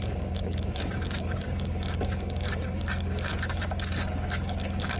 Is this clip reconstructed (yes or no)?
yes